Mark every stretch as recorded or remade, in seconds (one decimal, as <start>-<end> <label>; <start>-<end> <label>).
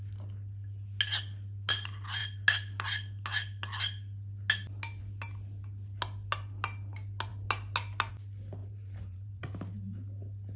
0.0-8.6 recorded; 8.6-9.4 remade; 9.4-10.6 recorded